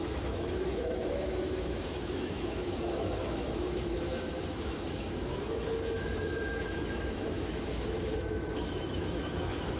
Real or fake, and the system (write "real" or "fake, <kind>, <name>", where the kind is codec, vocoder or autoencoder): fake, autoencoder, DAC-VAE